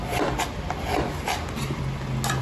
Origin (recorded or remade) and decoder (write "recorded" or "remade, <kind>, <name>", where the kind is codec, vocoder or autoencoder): recorded